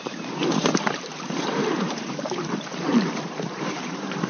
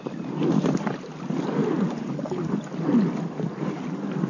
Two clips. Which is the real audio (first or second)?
second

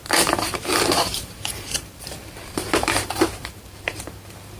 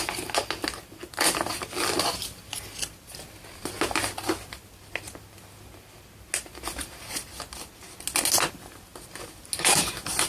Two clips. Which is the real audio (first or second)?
second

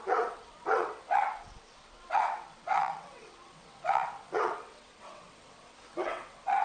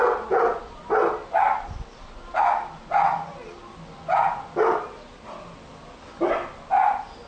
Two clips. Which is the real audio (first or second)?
second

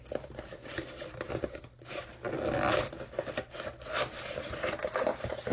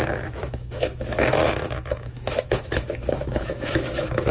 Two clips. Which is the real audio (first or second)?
first